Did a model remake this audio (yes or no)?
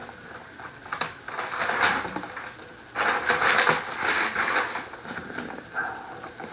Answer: no